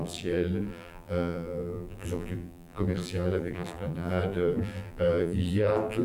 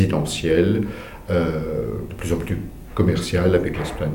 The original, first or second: second